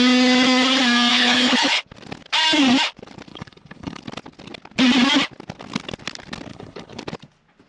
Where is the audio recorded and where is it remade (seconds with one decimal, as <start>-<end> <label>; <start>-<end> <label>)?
0.0-1.1 recorded; 1.1-1.8 remade; 1.8-3.3 recorded; 3.3-4.0 remade; 4.0-6.5 recorded; 6.5-7.0 remade; 7.0-7.7 recorded